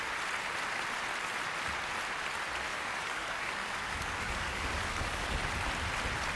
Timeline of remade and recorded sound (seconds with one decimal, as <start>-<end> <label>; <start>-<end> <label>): 0.0-2.7 recorded; 2.7-5.5 remade; 5.5-6.4 recorded